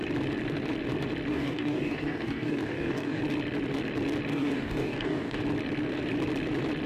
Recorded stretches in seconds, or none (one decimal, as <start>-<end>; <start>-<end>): 0.0-1.3; 3.2-4.3; 5.4-6.9